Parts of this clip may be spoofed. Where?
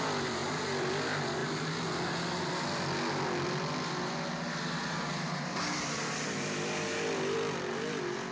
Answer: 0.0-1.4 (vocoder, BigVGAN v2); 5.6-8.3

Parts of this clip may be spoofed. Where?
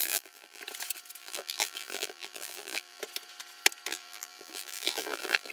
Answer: 0.0-0.6 (vocoder, BigVGAN v2); 1.2-3.0; 3.9-5.5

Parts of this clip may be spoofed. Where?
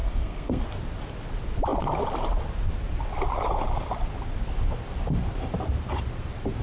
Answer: 0.0-0.6 (codec, SNAC)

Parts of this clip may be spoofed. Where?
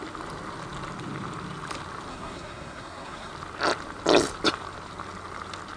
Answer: 2.1-3.3 (codec, SNAC)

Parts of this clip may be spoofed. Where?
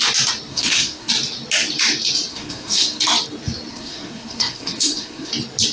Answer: 0.5-1.1 (codec, SNAC); 2.3-3.0; 3.7-5.3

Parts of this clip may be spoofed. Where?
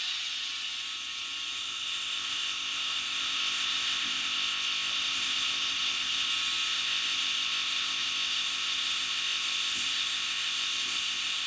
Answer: 1.6-6.3 (codec, ZipCodec); 6.7-11.5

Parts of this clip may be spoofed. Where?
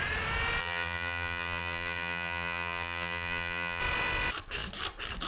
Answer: 0.6-3.8 (vocoder, BigVGAN v2)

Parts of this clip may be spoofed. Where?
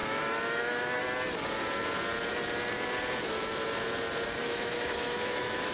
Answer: 0.0-1.0 (autoencoder, DAC-VAE); 4.4-5.7